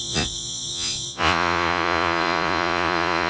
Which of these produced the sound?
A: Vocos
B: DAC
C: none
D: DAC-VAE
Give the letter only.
A